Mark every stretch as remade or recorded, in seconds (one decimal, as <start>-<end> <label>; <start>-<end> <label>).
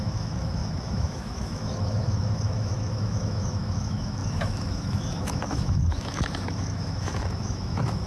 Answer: 0.0-8.1 remade